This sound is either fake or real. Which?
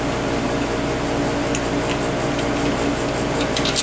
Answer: real